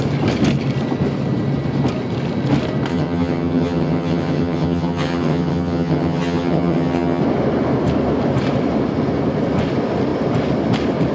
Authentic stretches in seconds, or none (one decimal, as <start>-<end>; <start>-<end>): 0.0-2.9; 7.2-11.1